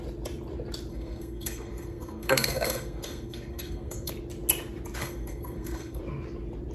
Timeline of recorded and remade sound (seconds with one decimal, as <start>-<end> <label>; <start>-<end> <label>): 0.0-0.9 recorded; 0.9-4.1 remade; 4.1-5.0 recorded; 5.0-6.0 remade; 6.0-6.7 recorded